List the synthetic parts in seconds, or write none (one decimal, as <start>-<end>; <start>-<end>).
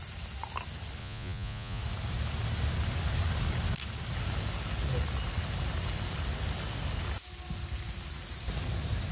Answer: 1.0-1.8